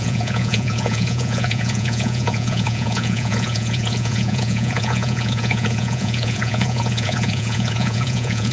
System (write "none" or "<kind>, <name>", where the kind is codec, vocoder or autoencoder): vocoder, Vocos